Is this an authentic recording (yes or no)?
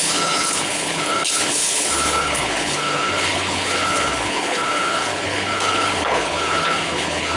no